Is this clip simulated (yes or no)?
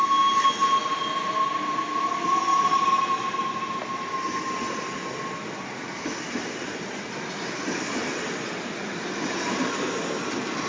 no